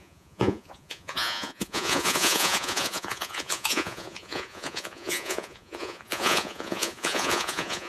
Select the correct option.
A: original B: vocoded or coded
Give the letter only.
B